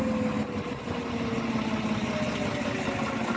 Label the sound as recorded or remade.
recorded